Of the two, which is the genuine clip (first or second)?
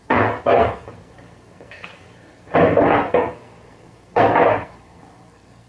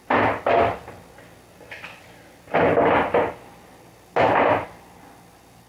second